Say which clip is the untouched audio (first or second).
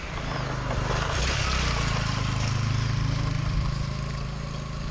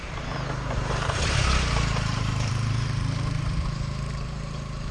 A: first